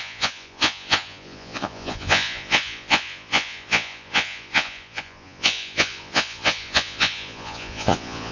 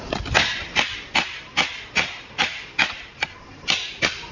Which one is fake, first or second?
first